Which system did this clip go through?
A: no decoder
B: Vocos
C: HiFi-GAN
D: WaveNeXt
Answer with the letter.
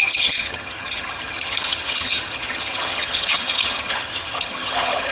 C